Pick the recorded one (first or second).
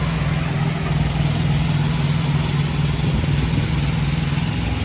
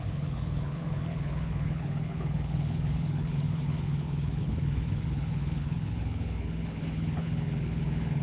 first